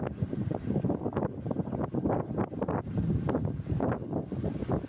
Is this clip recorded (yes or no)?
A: yes